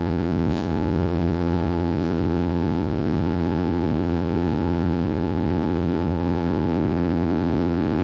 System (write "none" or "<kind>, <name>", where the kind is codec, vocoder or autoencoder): vocoder, Vocos